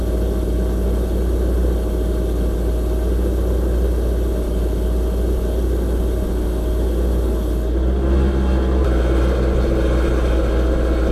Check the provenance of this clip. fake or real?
real